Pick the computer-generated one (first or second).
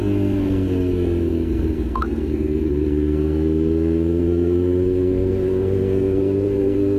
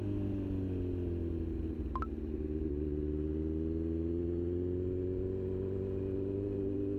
first